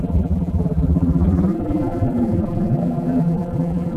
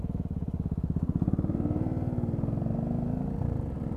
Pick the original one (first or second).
second